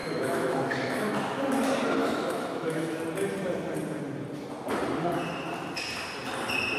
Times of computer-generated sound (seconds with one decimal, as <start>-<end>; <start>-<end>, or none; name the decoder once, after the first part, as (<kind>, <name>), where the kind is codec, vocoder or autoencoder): 0.0-1.1 (autoencoder, DAC-VAE); 2.0-3.0